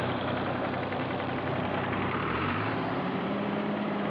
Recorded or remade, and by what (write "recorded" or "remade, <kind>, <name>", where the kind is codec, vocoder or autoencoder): remade, vocoder, BigVGAN v2